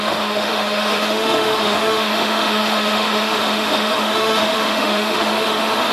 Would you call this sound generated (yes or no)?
yes